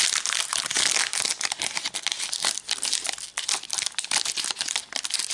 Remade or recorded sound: recorded